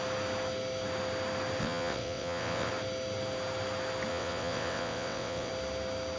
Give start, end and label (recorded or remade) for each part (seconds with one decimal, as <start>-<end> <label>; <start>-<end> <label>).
0.0-1.6 recorded; 1.6-2.7 remade; 2.7-4.1 recorded; 4.1-5.5 remade; 5.5-6.2 recorded